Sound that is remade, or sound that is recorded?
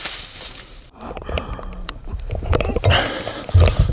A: remade